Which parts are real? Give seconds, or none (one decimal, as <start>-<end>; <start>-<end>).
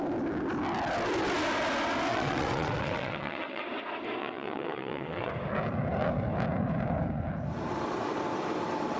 0.0-2.1; 3.6-4.2; 5.3-9.0